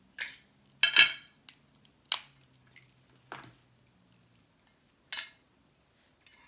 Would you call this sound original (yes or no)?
yes